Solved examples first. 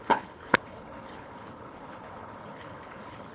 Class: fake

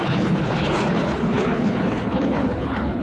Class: fake